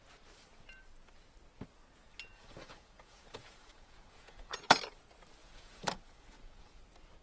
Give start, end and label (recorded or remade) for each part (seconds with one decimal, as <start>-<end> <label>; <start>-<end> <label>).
0.0-2.3 recorded; 2.3-4.8 remade; 4.8-5.4 recorded; 5.4-6.8 remade; 6.8-7.2 recorded